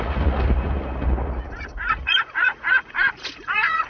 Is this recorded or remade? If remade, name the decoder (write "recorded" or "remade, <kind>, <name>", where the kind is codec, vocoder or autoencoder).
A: remade, vocoder, Vocos